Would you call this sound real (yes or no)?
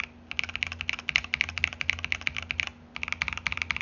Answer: yes